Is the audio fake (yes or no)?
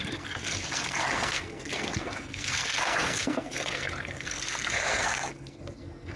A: yes